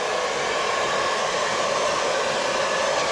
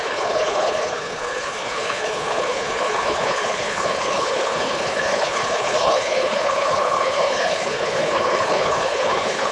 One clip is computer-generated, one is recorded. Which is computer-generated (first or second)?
second